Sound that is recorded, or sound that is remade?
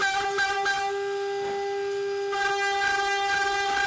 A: recorded